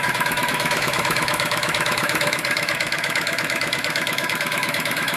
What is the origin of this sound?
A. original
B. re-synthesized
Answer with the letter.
B